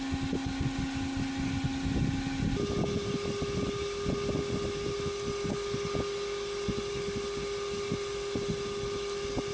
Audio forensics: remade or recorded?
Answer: recorded